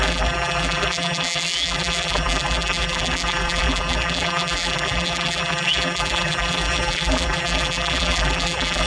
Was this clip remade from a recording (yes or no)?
yes